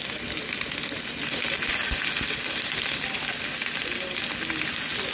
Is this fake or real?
real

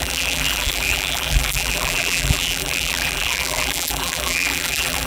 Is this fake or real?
fake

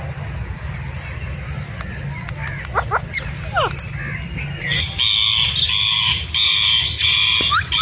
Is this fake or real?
real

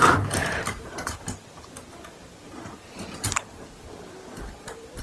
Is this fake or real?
real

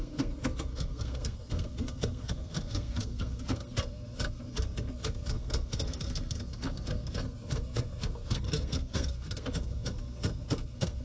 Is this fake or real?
fake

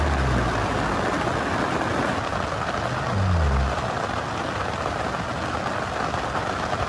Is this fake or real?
real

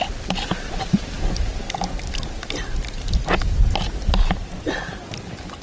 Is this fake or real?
real